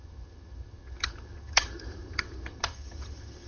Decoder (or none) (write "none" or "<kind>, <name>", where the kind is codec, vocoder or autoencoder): vocoder, HiFi-GAN